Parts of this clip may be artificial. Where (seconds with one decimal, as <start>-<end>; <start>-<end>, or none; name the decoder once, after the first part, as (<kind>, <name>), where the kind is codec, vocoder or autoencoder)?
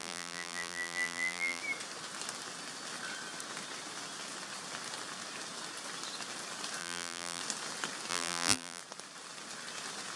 0.0-1.6 (vocoder, BigVGAN v2); 6.8-7.4; 8.1-8.8